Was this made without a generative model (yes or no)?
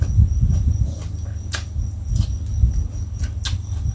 yes